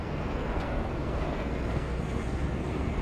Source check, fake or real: fake